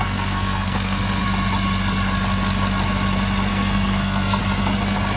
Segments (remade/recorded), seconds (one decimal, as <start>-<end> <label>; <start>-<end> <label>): 0.0-1.2 remade; 1.2-3.5 recorded; 3.5-4.4 remade; 4.4-5.2 recorded